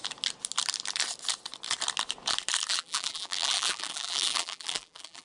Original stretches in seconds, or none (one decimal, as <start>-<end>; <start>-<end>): 0.0-2.7